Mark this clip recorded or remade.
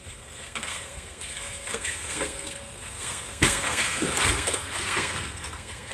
remade